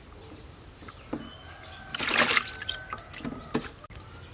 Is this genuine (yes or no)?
yes